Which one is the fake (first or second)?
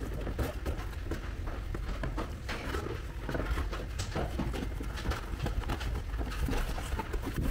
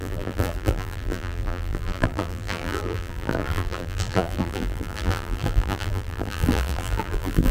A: second